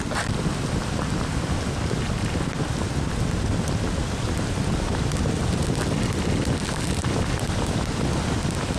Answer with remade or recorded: recorded